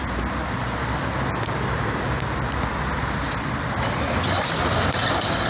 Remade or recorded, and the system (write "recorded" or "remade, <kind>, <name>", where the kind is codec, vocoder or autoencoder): recorded